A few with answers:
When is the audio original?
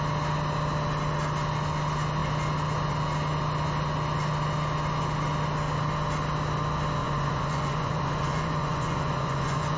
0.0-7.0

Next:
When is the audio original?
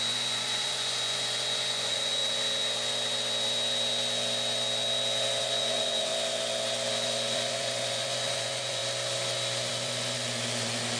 2.2-5.4; 6.1-6.9; 8.8-9.7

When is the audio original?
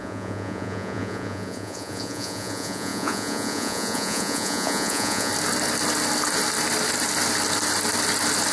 5.3-8.5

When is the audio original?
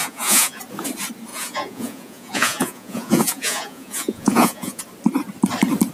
0.6-1.3; 4.8-5.9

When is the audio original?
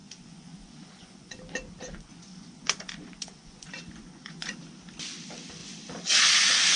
1.4-1.8; 4.6-6.8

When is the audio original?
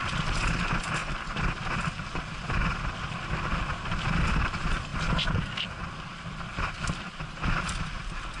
0.0-8.4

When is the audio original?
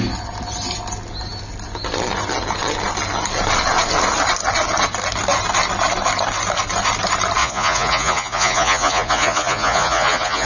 0.0-7.4